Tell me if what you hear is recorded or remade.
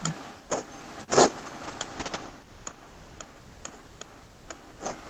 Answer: remade